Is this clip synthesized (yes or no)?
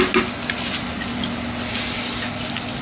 no